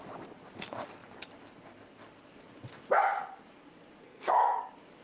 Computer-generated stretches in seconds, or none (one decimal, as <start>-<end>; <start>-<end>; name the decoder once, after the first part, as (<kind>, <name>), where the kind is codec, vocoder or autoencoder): 4.0-4.6 (codec, SNAC)